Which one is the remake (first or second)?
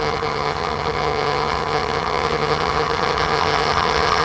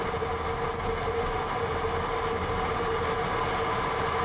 first